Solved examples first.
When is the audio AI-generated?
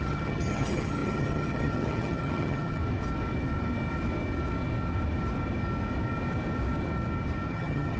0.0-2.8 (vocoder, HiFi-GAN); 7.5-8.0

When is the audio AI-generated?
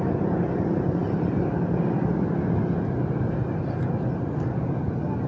none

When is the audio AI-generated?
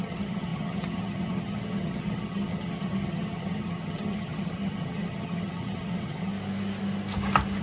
0.0-6.3 (vocoder, HiFi-GAN)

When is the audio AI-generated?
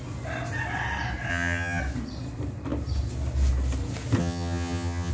1.3-1.8 (vocoder, HiFi-GAN); 4.2-5.1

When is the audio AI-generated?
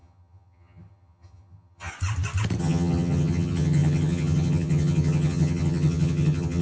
0.0-1.9 (vocoder, HiFi-GAN); 2.6-6.6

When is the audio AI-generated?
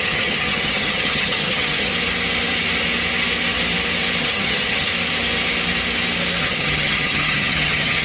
0.0-1.9 (vocoder, HiFi-GAN); 4.2-4.9; 6.4-8.0